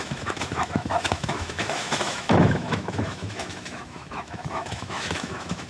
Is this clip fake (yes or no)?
yes